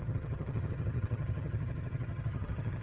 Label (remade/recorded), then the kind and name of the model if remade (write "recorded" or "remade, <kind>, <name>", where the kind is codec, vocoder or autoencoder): remade, vocoder, HiFi-GAN